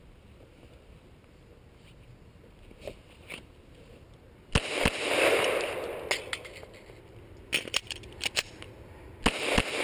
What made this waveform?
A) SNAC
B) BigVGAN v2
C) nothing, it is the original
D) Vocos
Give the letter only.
C